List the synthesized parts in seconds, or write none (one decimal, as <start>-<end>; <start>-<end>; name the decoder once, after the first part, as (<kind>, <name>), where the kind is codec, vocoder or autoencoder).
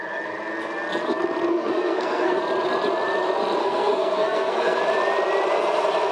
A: 1.5-2.4 (codec, SNAC); 3.6-4.8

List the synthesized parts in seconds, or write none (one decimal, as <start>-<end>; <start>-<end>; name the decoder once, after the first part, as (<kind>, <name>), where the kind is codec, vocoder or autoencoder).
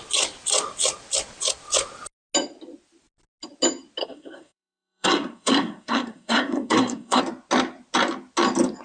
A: 4.0-7.2 (codec, SNAC)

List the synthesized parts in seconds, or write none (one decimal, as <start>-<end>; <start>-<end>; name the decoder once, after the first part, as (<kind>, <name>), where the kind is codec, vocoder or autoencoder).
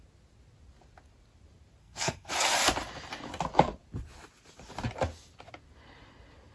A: 1.8-2.3 (codec, SNAC)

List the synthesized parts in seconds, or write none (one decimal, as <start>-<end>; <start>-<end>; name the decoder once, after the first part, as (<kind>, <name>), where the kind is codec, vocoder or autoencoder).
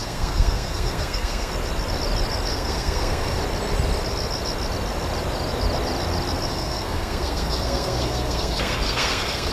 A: 0.0-1.5 (codec, SNAC); 2.5-3.4; 6.5-9.5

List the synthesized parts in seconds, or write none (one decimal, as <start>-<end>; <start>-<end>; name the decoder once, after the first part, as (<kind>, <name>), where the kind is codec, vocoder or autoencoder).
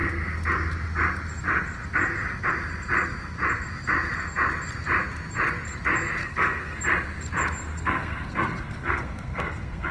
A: 6.2-6.8 (codec, SNAC); 7.7-9.9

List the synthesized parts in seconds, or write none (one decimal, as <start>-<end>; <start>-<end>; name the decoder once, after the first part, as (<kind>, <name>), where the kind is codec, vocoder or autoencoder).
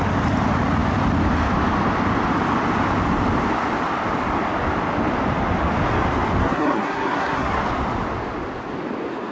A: 6.4-7.6 (codec, SNAC)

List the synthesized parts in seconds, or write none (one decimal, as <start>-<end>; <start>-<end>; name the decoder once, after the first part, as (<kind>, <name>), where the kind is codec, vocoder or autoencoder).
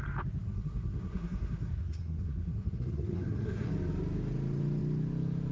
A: 0.4-3.7 (codec, SNAC)